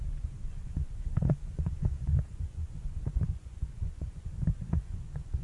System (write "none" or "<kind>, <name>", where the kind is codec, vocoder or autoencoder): vocoder, Vocos